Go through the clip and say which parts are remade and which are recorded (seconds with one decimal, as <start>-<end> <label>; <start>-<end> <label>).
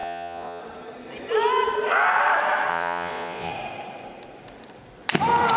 0.0-0.6 remade; 0.6-2.7 recorded; 2.7-3.5 remade; 3.5-5.6 recorded